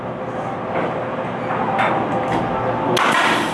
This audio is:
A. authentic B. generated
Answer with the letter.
A